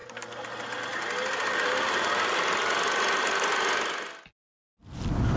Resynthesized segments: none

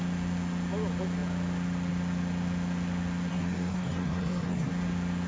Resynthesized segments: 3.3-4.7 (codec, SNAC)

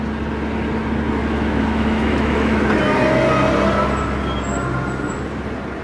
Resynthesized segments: 1.2-2.6 (autoencoder, DAC-VAE)

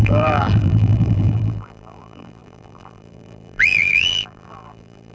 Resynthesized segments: 0.0-5.1 (vocoder, BigVGAN v2)

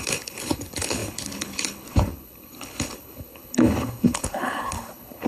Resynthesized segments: 0.0-5.3 (codec, HILCodec)

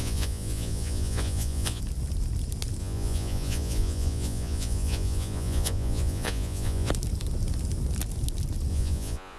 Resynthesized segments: 0.0-1.8 (vocoder, Vocos); 2.8-6.9; 8.7-9.4